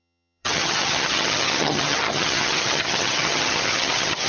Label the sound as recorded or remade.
remade